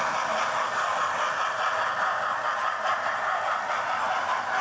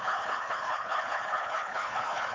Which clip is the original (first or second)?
first